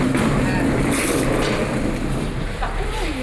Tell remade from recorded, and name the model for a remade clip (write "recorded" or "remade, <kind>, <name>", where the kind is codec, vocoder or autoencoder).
recorded